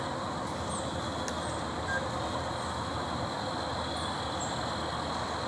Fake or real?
real